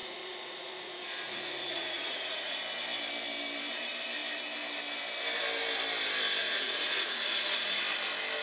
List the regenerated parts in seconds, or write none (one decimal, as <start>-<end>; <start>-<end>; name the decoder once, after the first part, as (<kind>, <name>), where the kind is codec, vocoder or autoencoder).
0.0-2.6 (vocoder, Vocos); 6.4-7.8

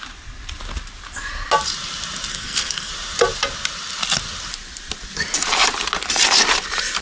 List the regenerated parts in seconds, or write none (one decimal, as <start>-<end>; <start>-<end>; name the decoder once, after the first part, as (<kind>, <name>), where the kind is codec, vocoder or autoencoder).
2.3-2.9 (codec, SNAC)